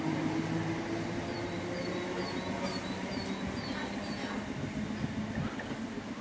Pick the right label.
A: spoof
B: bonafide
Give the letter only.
B